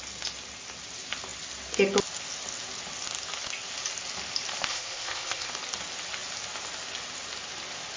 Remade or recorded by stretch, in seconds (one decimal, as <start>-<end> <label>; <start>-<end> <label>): 0.0-4.7 recorded; 4.7-5.5 remade; 5.5-8.0 recorded